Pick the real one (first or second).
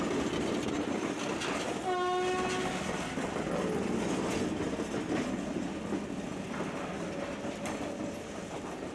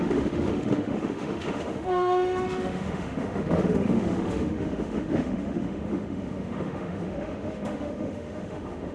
first